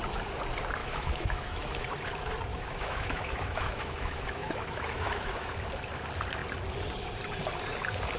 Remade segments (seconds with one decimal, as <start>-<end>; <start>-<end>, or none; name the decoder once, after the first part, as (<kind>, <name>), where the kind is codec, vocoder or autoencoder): 0.8-1.8 (autoencoder, DAC-VAE); 2.5-5.5